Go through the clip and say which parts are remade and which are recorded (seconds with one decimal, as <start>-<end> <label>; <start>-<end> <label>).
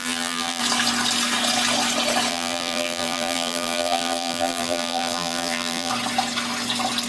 0.0-0.6 remade; 0.6-2.3 recorded; 2.3-5.9 remade; 5.9-7.1 recorded